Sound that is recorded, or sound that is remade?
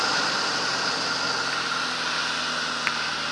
recorded